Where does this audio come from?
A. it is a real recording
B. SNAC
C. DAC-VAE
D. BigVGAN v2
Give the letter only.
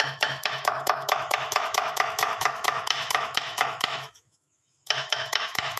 C